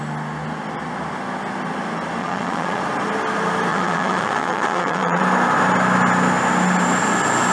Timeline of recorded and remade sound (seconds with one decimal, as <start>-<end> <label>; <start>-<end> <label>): 0.0-2.2 recorded; 2.2-2.8 remade; 2.8-3.7 recorded; 3.7-5.2 remade; 5.2-7.5 recorded